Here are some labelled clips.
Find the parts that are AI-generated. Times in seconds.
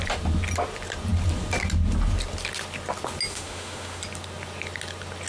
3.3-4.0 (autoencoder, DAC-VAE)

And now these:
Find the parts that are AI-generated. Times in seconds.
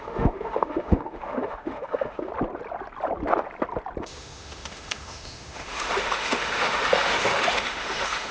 0.0-2.3 (autoencoder, DAC-VAE); 4.0-8.3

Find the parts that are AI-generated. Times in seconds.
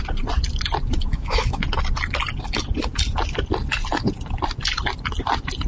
1.1-1.6 (autoencoder, DAC-VAE)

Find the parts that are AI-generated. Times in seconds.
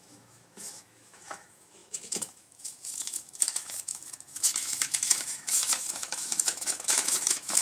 0.0-7.6 (autoencoder, DAC-VAE)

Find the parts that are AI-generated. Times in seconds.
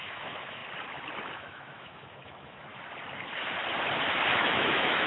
0.0-0.6 (autoencoder, DAC-VAE); 1.3-2.7; 4.3-5.1